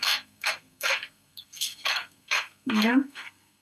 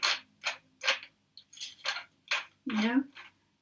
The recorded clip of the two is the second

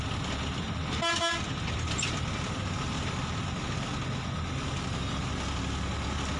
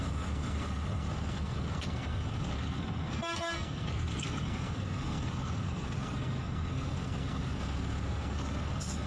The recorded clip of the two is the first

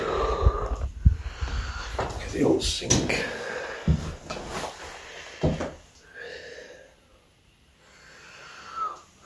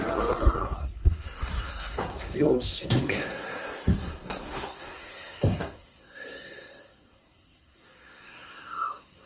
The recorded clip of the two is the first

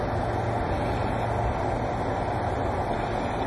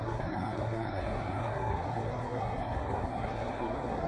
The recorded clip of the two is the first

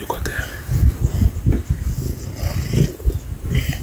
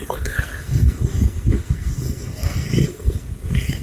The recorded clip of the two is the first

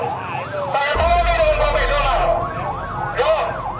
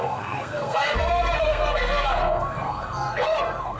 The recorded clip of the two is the first